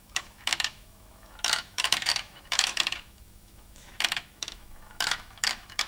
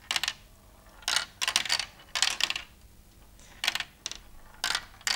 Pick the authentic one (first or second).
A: second